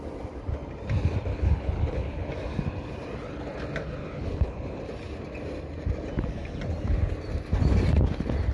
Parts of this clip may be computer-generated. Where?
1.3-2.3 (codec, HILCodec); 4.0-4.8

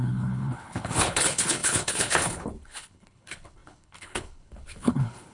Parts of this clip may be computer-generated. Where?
0.0-5.3 (codec, HILCodec)

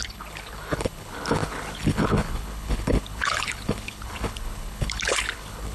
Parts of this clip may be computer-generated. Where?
0.0-5.7 (codec, HILCodec)

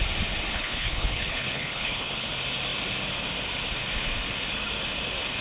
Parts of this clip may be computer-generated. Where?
0.5-2.3 (codec, HILCodec)